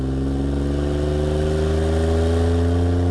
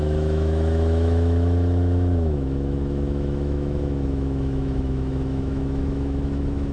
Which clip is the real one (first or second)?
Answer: first